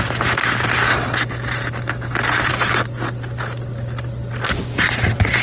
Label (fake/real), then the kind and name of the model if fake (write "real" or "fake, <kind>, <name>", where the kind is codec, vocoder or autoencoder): real